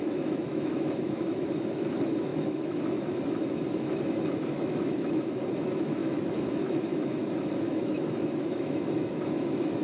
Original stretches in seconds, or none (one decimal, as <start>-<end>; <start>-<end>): none